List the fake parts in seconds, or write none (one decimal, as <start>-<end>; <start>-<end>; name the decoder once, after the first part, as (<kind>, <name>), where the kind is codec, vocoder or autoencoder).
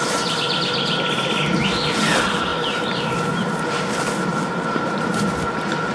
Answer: none